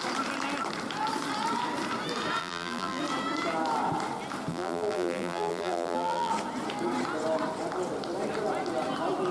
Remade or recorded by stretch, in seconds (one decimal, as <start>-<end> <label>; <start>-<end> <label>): 0.0-2.4 recorded; 2.4-3.0 remade; 3.0-4.5 recorded; 4.5-6.3 remade; 6.3-9.3 recorded